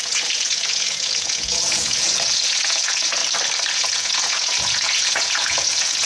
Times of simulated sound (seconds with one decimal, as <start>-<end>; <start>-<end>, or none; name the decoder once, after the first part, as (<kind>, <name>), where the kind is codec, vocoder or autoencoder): 0.0-3.2 (vocoder, Vocos); 3.7-6.1

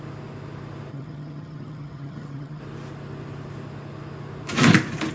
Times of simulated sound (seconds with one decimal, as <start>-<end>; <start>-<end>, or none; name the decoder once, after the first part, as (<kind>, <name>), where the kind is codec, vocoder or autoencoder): 0.9-2.6 (vocoder, HiFi-GAN)

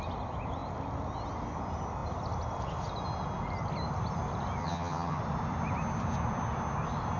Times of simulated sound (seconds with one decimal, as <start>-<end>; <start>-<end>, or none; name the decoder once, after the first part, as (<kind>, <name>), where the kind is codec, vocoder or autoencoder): 4.6-5.2 (vocoder, HiFi-GAN)

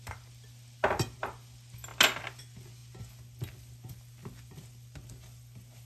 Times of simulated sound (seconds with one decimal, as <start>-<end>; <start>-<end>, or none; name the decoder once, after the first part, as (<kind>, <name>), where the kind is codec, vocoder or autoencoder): none

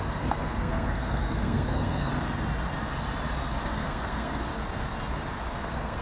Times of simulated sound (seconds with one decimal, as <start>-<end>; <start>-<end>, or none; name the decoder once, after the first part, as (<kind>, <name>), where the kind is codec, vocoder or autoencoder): 0.0-2.1 (codec, SNAC); 3.6-4.5; 5.6-6.0

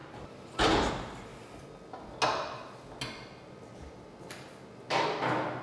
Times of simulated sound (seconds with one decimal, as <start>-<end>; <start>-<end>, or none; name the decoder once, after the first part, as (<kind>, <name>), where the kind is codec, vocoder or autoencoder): 0.0-0.9 (vocoder, BigVGAN v2)

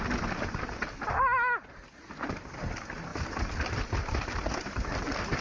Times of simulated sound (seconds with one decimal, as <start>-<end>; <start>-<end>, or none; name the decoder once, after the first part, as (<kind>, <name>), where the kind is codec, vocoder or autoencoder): none